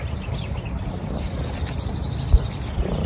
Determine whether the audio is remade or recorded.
recorded